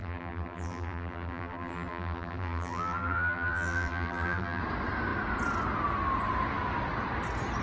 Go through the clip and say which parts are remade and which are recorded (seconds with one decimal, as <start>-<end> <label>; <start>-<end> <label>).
0.0-4.6 remade; 4.6-7.6 recorded

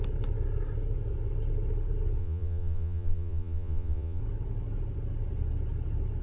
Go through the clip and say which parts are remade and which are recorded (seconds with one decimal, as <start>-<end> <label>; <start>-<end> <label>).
0.0-2.2 recorded; 2.2-4.2 remade; 4.2-6.2 recorded

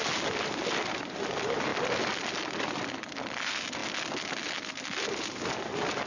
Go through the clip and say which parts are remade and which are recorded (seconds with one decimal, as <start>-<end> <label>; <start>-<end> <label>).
0.0-6.1 recorded

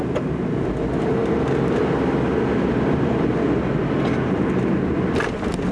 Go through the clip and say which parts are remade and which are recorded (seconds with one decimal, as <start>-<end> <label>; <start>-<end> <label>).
0.0-5.7 recorded

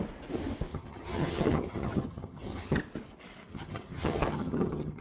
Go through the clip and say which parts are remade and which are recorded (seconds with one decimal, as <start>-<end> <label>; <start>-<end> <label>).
0.0-0.7 recorded; 0.7-2.8 remade; 2.8-3.5 recorded; 3.5-5.0 remade